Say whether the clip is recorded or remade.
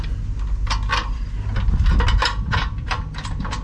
recorded